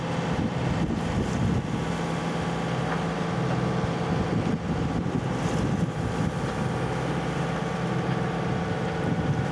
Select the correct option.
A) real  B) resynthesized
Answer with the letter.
A